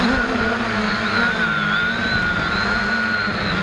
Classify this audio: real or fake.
real